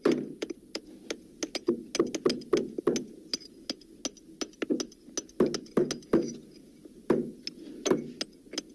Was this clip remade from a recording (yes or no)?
no